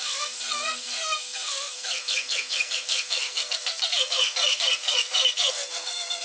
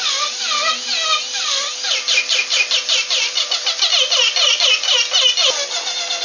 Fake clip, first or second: first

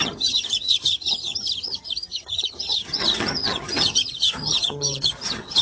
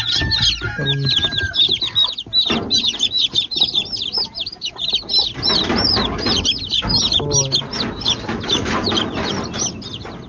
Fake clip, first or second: first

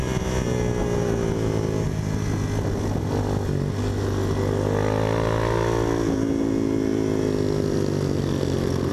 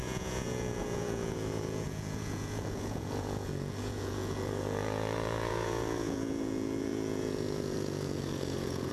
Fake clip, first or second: second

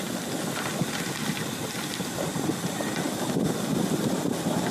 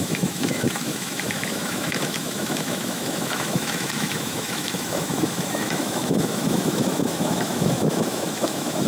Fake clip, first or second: second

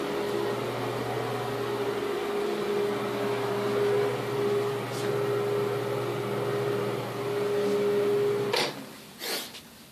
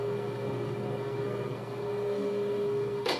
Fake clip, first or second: second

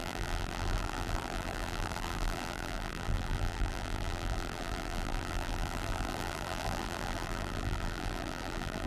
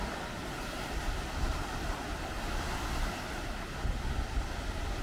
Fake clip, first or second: first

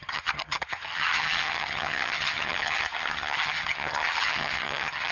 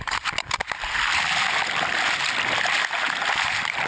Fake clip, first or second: first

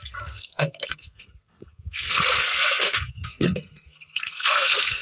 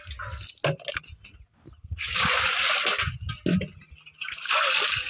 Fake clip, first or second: first